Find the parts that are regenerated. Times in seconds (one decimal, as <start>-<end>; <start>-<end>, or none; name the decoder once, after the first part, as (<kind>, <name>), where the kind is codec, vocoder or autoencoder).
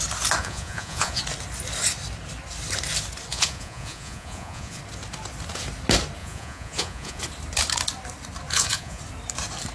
0.4-1.2 (vocoder, Vocos); 3.3-4.8; 6.2-7.2; 8.5-9.0